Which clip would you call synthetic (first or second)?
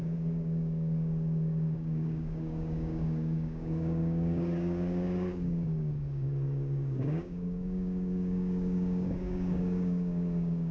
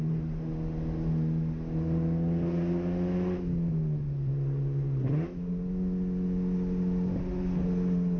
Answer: first